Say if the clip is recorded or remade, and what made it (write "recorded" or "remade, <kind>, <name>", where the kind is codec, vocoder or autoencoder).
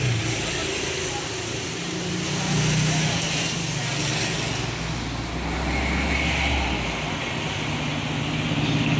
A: recorded